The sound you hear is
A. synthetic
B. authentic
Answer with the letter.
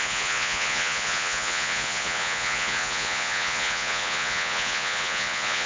A